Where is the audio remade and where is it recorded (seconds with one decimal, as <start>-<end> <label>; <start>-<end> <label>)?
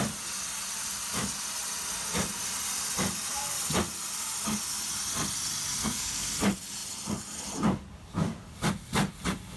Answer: 0.0-5.8 recorded; 5.8-6.3 remade; 6.3-9.6 recorded